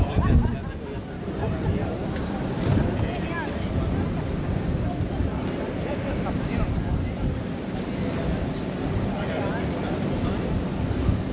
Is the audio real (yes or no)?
yes